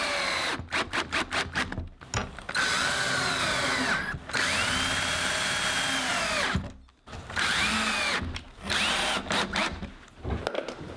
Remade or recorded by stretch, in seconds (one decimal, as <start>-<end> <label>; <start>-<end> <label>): 0.0-11.0 recorded